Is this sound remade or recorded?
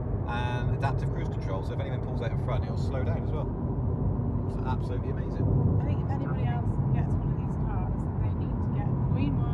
recorded